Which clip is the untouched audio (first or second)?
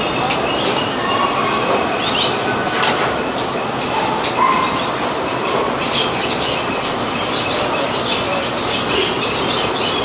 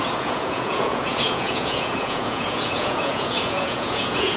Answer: first